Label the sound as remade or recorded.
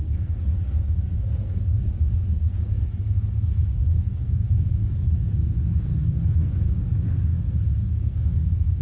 remade